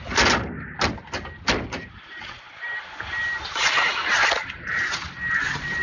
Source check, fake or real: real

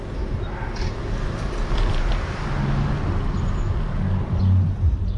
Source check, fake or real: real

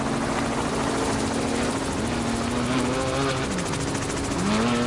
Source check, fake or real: real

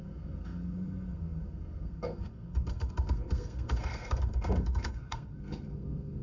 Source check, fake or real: fake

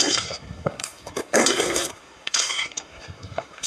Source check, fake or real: fake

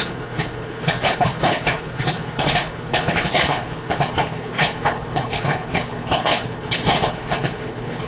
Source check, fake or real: fake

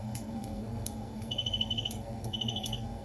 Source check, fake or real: fake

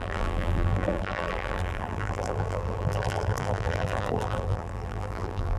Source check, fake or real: fake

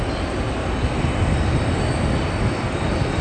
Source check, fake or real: real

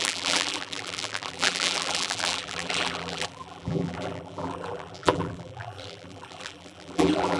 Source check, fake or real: fake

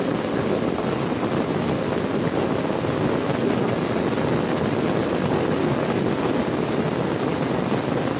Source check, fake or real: real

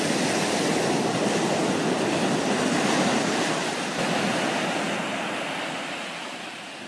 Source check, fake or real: real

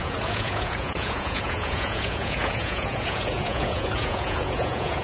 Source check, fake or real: fake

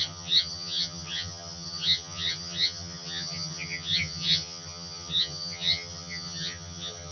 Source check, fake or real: fake